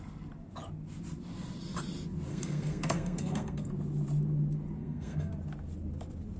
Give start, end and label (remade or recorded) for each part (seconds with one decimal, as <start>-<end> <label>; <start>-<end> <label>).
0.0-2.3 recorded; 2.3-3.7 remade; 3.7-4.8 recorded; 4.8-5.3 remade; 5.3-6.4 recorded